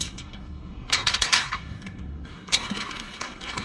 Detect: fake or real fake